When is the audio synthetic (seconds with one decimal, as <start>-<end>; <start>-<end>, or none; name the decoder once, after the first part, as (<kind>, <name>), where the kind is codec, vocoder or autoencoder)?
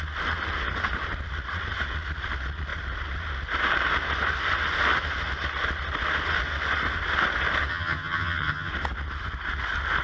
7.7-8.7 (vocoder, HiFi-GAN)